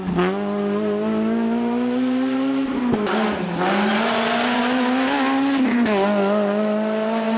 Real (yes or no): yes